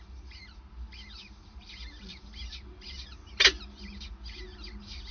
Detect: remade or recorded recorded